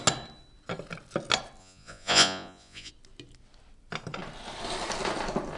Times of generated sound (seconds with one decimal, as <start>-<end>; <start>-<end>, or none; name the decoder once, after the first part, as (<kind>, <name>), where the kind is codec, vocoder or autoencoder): 1.6-2.9 (vocoder, Vocos)